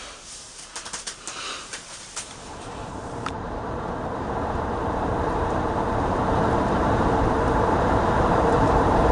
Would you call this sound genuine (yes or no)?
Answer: no